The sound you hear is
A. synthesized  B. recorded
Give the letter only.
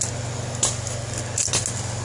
B